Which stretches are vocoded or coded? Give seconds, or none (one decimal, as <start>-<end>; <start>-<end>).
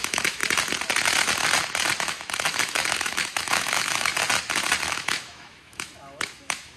0.0-0.4; 2.0-4.1; 4.8-6.8